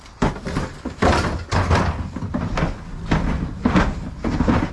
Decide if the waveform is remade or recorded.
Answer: recorded